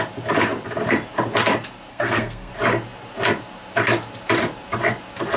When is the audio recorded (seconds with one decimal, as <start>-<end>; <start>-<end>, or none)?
0.0-1.9; 2.5-5.4